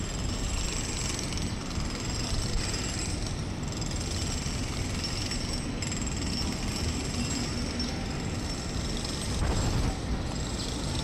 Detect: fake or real real